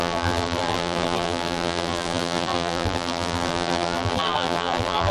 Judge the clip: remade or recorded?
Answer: remade